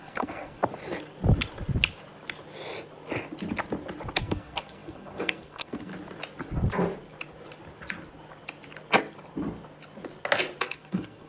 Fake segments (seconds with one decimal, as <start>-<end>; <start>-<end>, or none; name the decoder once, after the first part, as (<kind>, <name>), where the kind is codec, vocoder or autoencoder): 0.0-0.6 (codec, SNAC); 4.2-5.9; 10.6-11.3